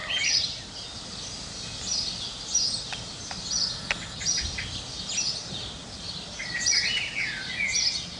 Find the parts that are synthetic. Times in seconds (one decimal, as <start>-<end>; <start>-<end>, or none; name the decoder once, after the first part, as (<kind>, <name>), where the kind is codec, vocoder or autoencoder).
none